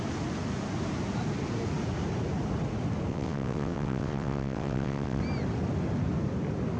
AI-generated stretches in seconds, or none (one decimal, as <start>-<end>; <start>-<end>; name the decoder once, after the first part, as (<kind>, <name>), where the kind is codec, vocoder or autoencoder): 3.1-5.2 (vocoder, WaveNeXt)